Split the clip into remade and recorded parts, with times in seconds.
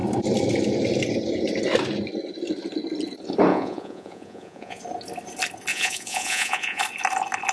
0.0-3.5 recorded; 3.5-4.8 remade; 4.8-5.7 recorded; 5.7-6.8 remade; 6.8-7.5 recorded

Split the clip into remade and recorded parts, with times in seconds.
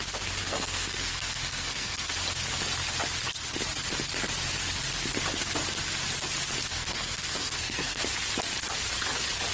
0.0-0.4 recorded; 0.4-2.1 remade; 2.1-6.7 recorded; 6.7-8.0 remade; 8.0-9.5 recorded